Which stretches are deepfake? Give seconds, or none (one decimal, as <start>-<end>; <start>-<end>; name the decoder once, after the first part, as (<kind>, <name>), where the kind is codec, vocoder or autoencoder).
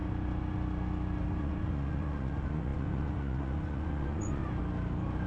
1.4-4.4 (vocoder, Vocos)